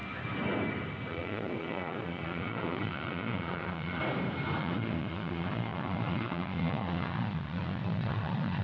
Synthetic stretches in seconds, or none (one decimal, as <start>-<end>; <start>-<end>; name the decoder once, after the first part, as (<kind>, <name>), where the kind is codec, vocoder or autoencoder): 1.1-4.0 (vocoder, Vocos); 4.6-8.6